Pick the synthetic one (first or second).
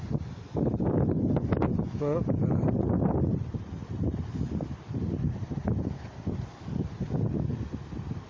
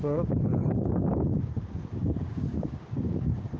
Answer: second